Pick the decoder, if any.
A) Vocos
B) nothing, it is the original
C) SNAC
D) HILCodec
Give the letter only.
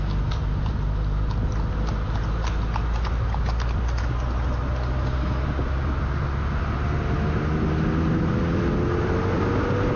B